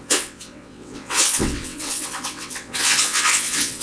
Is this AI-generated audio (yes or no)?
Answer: yes